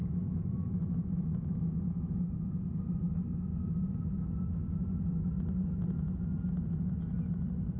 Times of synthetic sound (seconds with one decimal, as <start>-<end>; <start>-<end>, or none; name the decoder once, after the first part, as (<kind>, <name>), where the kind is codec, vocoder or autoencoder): 0.0-2.2 (autoencoder, DAC-VAE)